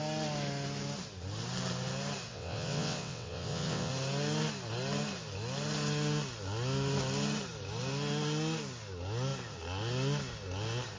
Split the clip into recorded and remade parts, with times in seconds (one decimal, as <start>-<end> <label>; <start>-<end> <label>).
0.0-2.3 recorded; 2.3-3.9 remade; 3.9-11.0 recorded